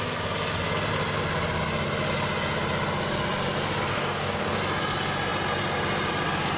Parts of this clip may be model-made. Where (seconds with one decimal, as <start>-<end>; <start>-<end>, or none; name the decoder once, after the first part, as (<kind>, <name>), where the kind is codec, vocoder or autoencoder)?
3.9-4.6 (codec, DAC)